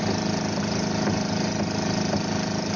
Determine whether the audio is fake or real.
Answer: real